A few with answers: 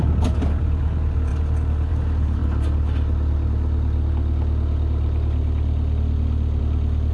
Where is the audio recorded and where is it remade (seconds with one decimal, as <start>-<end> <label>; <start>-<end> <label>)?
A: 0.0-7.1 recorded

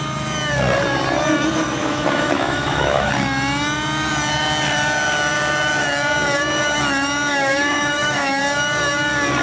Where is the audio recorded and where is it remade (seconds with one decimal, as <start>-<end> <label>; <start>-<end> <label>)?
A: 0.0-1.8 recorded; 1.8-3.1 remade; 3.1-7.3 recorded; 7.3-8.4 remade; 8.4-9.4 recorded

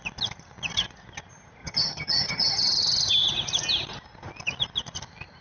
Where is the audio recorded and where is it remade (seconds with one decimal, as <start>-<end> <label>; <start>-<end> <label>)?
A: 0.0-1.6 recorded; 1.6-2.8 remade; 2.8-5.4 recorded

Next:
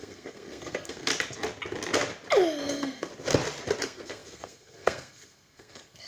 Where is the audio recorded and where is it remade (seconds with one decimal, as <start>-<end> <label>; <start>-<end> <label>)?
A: 0.0-1.1 remade; 1.1-2.7 recorded; 2.7-3.1 remade; 3.1-3.8 recorded; 3.8-6.1 remade